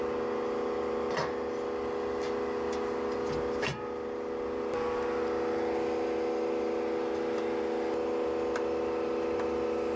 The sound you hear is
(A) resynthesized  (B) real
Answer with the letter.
B